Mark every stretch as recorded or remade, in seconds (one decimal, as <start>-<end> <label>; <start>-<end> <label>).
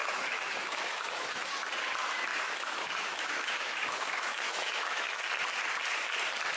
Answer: 0.0-1.5 remade; 1.5-2.3 recorded; 2.3-5.2 remade; 5.2-6.6 recorded